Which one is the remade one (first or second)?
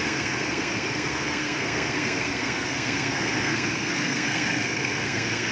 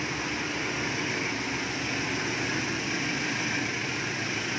first